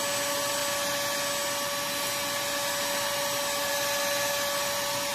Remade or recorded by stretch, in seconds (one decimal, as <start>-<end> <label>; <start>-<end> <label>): 0.0-5.1 recorded